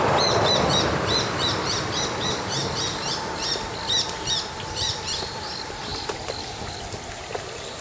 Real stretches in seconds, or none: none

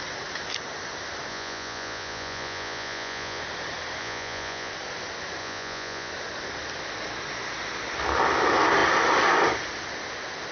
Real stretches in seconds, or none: 0.0-1.3; 3.4-4.0; 4.7-5.4; 6.1-10.5

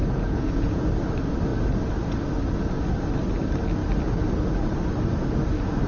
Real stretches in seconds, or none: 0.9-5.9

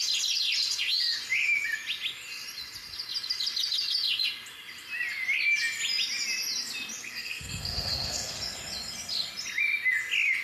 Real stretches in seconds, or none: 0.0-7.0; 8.4-10.4

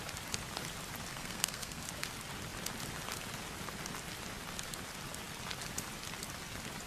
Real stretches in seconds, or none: 0.0-1.1; 1.8-6.9